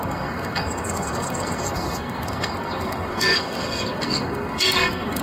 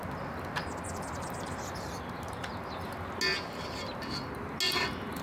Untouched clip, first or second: second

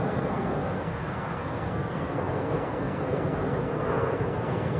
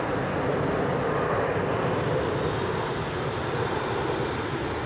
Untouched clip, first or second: second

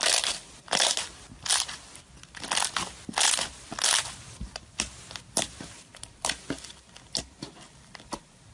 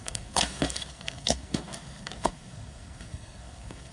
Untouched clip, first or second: first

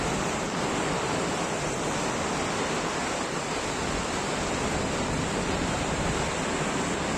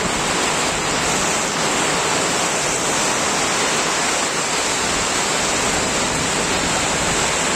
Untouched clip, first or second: second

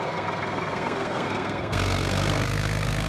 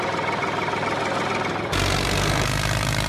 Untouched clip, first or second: second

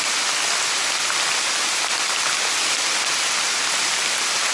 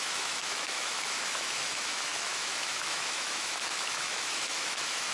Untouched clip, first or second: first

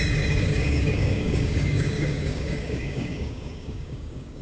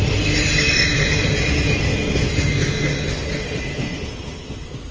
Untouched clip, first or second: second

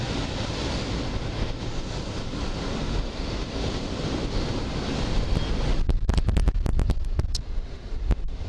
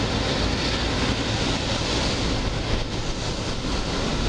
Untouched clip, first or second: second